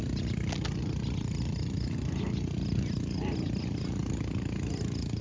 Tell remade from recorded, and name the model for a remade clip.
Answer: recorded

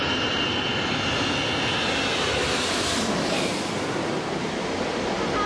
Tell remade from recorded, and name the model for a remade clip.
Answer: recorded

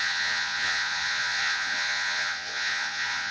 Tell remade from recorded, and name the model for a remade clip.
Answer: remade, vocoder, Vocos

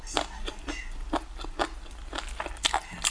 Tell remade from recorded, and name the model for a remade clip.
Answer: recorded